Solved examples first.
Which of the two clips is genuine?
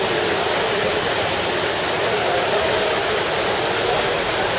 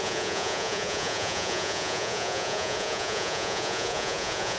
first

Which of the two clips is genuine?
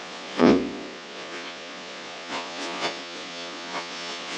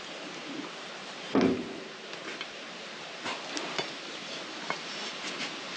second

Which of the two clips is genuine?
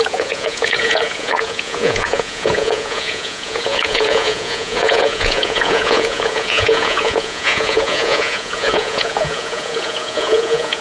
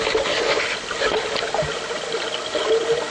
second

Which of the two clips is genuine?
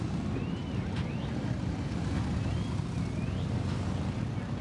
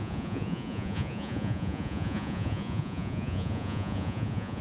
first